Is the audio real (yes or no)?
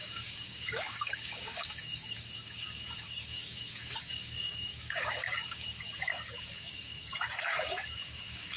no